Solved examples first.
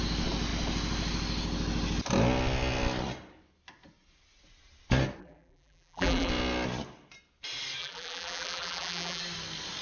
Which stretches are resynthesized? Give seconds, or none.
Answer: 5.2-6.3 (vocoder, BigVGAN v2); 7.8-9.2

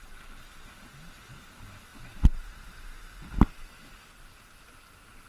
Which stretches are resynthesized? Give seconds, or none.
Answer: none